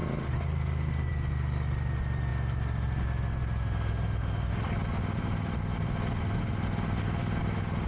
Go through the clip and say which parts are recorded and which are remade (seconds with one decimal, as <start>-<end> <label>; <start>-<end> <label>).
0.0-7.9 recorded

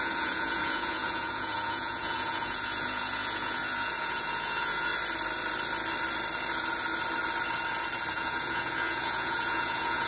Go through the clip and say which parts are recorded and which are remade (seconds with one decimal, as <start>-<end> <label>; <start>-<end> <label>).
0.0-4.9 remade; 4.9-8.1 recorded; 8.1-10.1 remade

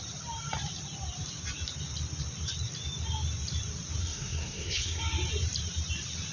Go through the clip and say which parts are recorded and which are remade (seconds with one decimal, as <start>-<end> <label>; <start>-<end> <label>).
0.0-4.0 recorded; 4.0-5.0 remade; 5.0-6.3 recorded

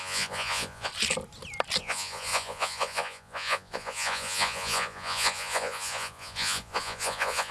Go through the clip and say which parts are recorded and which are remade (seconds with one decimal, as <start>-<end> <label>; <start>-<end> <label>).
0.0-0.9 remade; 0.9-1.8 recorded; 1.8-7.5 remade

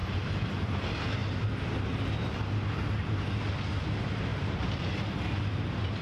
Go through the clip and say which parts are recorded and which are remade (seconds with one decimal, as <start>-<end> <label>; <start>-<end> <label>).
0.0-4.3 recorded; 4.3-4.9 remade; 4.9-6.0 recorded